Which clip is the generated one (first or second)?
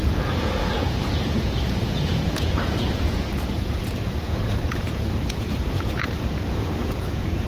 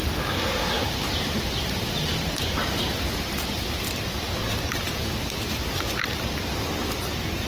first